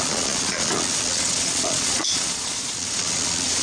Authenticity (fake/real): fake